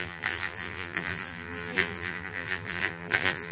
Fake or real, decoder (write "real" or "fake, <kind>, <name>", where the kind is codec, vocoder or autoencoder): fake, vocoder, BigVGAN v2